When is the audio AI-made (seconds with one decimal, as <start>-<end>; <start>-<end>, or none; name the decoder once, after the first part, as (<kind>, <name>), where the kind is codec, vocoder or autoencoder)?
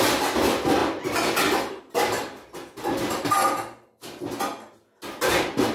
none